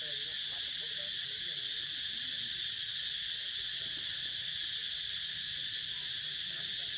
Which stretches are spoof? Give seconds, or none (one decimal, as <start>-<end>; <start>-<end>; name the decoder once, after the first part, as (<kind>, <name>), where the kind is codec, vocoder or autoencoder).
none

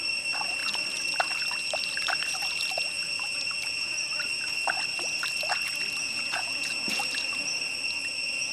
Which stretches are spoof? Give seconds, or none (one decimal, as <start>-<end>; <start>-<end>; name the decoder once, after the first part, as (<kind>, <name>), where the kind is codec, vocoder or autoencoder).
3.0-3.9 (vocoder, Vocos); 6.0-7.0

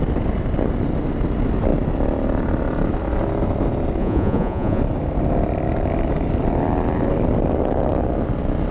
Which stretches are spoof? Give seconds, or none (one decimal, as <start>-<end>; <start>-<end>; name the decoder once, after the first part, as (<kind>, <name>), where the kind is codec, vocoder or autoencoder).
4.0-4.8 (vocoder, Vocos)

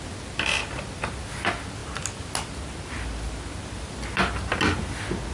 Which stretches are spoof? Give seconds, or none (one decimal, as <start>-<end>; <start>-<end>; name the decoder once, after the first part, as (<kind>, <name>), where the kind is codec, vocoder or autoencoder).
none

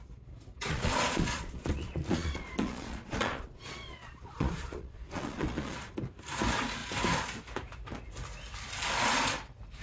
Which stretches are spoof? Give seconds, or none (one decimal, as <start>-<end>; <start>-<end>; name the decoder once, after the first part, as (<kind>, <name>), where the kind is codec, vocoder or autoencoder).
0.7-5.9 (vocoder, Vocos)

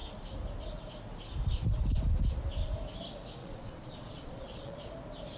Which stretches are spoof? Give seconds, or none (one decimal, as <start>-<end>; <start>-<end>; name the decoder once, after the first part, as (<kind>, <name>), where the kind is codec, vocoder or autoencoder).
3.4-4.9 (vocoder, Vocos)

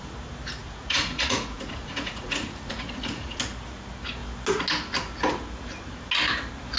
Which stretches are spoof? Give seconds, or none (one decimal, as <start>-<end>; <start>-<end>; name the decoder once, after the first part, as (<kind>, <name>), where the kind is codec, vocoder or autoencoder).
0.6-3.4 (vocoder, Vocos)

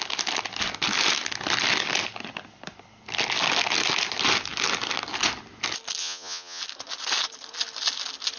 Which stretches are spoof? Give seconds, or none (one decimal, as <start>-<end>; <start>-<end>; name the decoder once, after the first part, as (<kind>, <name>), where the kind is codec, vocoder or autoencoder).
6.0-6.6 (vocoder, Vocos)